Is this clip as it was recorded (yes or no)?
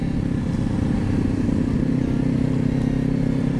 yes